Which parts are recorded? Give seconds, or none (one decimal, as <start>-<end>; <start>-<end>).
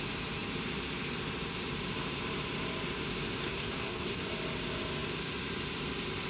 0.0-3.4; 4.3-6.3